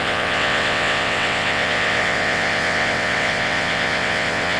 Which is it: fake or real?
fake